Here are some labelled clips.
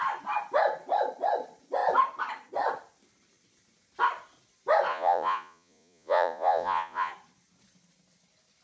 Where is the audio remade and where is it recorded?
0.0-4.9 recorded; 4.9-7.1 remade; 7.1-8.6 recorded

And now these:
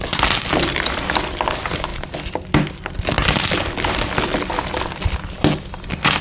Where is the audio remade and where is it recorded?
0.0-6.2 recorded

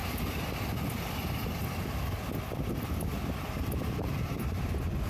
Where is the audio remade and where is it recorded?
0.0-5.1 remade

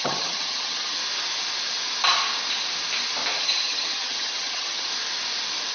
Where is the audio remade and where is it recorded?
0.0-1.0 remade; 1.0-3.4 recorded; 3.4-4.9 remade; 4.9-5.7 recorded

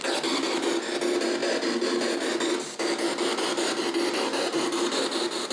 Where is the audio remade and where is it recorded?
0.0-5.5 recorded